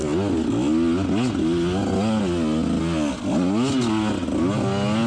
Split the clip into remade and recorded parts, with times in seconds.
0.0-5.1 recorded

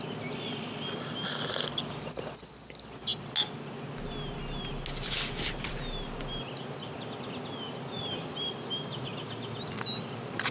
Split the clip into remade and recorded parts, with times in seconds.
0.0-10.5 recorded

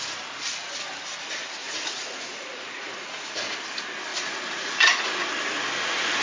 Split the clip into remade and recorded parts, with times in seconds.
0.0-1.6 recorded; 1.6-3.3 remade; 3.3-4.1 recorded; 4.1-5.3 remade; 5.3-6.2 recorded

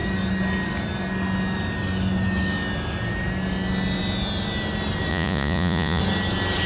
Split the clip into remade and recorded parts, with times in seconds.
0.0-5.1 recorded; 5.1-6.0 remade; 6.0-6.7 recorded

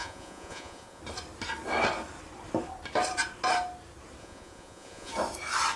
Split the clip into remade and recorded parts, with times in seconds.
0.0-1.0 remade; 1.0-4.2 recorded; 4.2-5.1 remade; 5.1-5.8 recorded